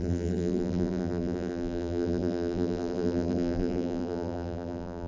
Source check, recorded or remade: remade